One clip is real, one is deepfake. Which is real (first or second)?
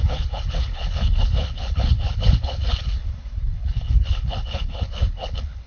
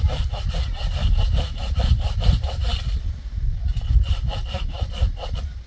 second